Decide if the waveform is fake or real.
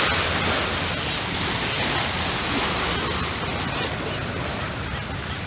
real